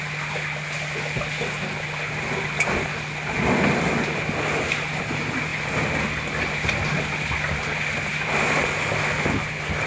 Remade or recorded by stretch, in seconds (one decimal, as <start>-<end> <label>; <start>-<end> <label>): 0.0-9.9 recorded